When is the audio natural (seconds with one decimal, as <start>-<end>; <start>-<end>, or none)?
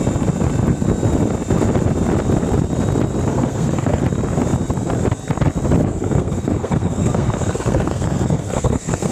0.0-3.3; 4.0-5.8